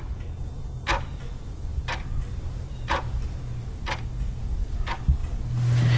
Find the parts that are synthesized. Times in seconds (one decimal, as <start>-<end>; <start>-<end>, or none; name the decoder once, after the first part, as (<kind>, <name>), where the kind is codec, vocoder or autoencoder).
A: 1.7-3.4 (vocoder, BigVGAN v2)